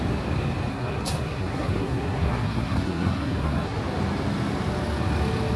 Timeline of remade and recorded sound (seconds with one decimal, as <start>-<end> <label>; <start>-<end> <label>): 0.0-0.7 recorded; 0.7-3.8 remade; 3.8-5.6 recorded